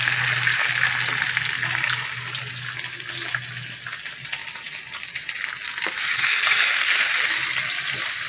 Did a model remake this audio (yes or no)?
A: no